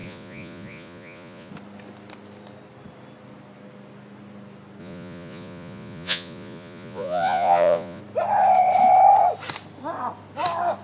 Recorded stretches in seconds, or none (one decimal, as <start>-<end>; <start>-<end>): 1.5-4.8; 8.0-10.8